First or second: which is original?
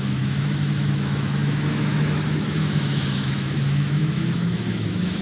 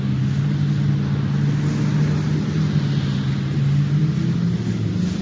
second